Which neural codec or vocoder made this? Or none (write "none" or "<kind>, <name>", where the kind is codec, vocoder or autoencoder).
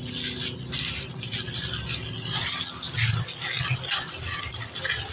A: none